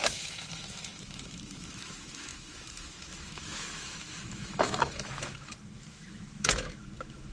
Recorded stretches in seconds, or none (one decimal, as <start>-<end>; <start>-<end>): none